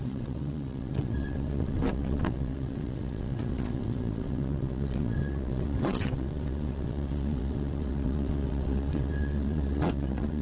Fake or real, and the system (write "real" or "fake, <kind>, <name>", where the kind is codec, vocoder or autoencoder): fake, vocoder, WaveNeXt